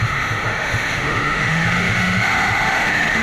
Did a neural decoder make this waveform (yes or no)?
yes